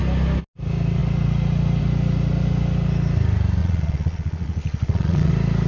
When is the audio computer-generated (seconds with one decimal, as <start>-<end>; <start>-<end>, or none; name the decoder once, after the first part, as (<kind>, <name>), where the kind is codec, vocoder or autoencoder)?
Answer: 3.6-5.3 (vocoder, Vocos)